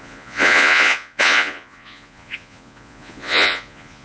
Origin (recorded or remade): remade